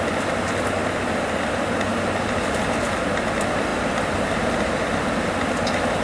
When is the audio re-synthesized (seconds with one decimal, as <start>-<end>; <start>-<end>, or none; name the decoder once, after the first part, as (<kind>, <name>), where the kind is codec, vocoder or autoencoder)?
none